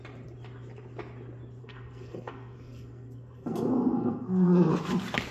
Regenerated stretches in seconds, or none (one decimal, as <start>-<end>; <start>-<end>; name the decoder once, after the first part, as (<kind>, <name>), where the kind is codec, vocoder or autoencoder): 1.6-4.8 (codec, SNAC)

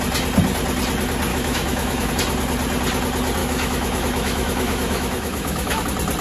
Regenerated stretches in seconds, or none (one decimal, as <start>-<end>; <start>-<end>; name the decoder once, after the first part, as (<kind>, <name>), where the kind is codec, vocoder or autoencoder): 1.3-2.1 (autoencoder, DAC-VAE); 3.4-5.8

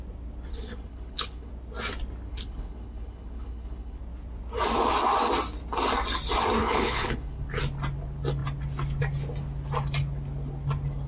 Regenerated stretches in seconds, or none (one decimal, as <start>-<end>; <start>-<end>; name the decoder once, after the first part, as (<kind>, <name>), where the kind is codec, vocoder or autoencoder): 0.5-1.5 (codec, HILCodec); 2.3-4.0; 6.6-7.6

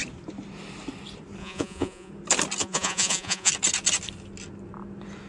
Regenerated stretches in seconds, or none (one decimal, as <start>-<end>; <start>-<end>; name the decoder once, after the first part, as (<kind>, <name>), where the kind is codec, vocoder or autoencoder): 1.4-2.1 (vocoder, Vocos); 2.6-3.5

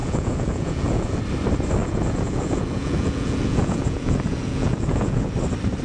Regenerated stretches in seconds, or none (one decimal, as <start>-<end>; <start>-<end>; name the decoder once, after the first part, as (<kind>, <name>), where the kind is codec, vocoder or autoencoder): 0.0-1.2 (vocoder, Vocos); 1.8-5.3